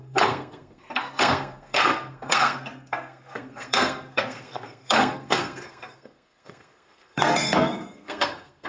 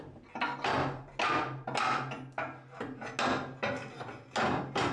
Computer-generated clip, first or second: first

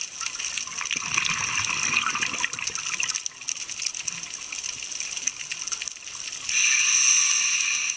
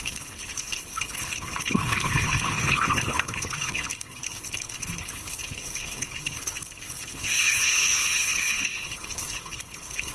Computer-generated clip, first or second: second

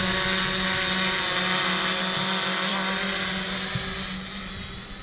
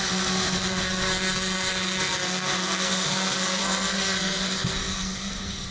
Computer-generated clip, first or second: second